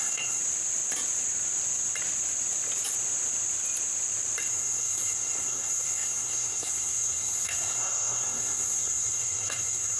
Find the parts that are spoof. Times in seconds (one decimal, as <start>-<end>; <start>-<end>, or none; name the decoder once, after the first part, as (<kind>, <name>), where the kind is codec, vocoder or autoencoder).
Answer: 0.0-0.4 (codec, SNAC); 4.5-10.0

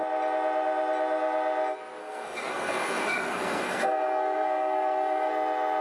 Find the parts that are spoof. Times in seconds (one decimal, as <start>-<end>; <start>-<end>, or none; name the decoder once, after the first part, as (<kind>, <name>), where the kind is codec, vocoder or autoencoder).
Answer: 2.0-5.3 (codec, SNAC)

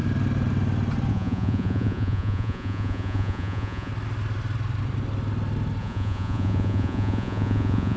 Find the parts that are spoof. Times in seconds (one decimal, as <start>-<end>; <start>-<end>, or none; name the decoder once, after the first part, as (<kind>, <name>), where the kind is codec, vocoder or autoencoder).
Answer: 1.1-3.9 (vocoder, Vocos); 5.8-8.0

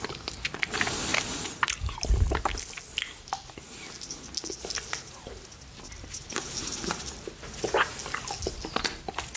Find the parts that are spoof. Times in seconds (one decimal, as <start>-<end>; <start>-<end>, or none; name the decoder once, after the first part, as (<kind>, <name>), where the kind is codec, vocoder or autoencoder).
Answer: none

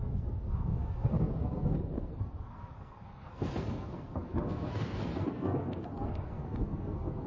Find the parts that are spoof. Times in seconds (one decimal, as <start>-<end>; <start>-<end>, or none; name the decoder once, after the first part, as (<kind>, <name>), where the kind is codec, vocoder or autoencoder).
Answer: 0.0-7.3 (codec, SNAC)

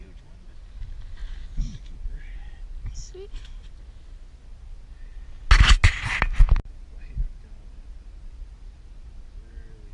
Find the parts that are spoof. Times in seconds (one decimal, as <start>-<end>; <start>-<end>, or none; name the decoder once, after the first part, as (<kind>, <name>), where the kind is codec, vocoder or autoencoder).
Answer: none